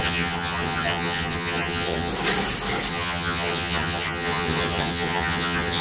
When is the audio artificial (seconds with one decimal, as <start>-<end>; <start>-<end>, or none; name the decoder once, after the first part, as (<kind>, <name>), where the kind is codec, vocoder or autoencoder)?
0.0-2.1 (vocoder, HiFi-GAN); 2.9-5.8